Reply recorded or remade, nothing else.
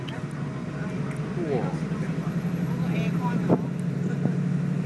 recorded